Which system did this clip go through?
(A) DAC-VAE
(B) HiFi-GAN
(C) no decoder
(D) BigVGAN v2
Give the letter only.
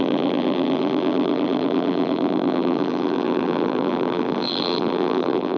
D